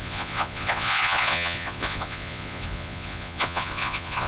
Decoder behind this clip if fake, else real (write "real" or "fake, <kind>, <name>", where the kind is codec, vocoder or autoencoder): fake, vocoder, Vocos